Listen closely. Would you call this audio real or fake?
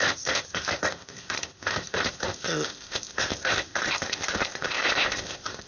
fake